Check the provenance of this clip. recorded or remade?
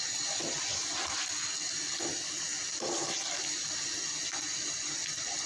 recorded